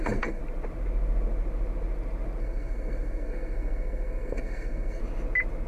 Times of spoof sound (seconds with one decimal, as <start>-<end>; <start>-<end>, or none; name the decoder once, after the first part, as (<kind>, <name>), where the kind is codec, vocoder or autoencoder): 0.0-0.4 (codec, SNAC); 2.4-5.0

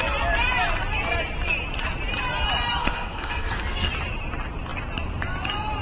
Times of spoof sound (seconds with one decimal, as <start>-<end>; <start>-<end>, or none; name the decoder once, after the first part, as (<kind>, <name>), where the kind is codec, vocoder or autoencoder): 2.8-3.9 (codec, SNAC)

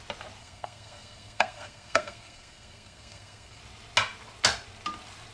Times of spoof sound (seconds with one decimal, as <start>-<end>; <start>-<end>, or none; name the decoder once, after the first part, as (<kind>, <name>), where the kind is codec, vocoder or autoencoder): 0.4-3.6 (codec, SNAC)

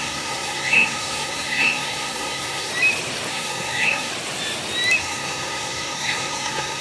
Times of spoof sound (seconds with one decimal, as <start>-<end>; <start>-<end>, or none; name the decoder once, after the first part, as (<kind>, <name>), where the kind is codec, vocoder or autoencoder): 0.0-2.7 (codec, SNAC); 3.3-4.1; 5.0-6.8